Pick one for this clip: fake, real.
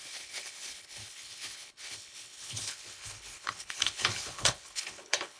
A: fake